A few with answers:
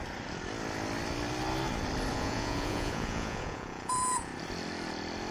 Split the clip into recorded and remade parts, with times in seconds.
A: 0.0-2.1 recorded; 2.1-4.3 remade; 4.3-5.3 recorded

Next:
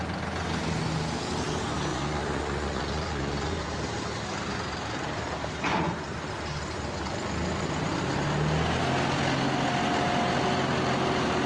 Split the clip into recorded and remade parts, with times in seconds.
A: 0.0-1.9 recorded; 1.9-3.7 remade; 3.7-5.7 recorded; 5.7-6.3 remade; 6.3-11.5 recorded

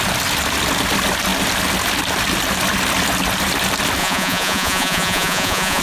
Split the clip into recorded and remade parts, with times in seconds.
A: 0.0-4.0 recorded; 4.0-5.8 remade

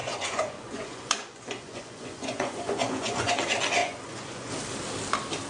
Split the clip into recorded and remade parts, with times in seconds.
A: 0.0-3.3 remade; 3.3-3.8 recorded; 3.8-4.5 remade; 4.5-5.5 recorded

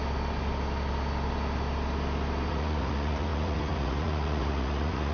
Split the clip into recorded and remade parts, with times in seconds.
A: 0.0-2.5 recorded; 2.5-5.1 remade

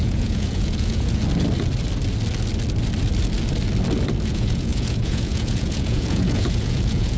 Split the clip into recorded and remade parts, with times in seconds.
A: 0.0-1.2 remade; 1.2-4.3 recorded; 4.3-7.2 remade

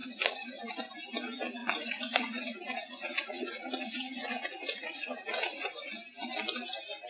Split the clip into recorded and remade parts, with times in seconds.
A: 0.0-0.7 remade; 0.7-1.6 recorded; 1.6-5.9 remade; 5.9-7.1 recorded

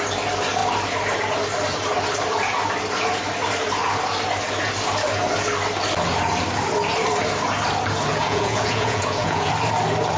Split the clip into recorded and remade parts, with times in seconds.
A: 0.0-8.1 recorded; 8.1-9.5 remade; 9.5-10.2 recorded